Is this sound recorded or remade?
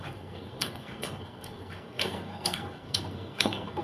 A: remade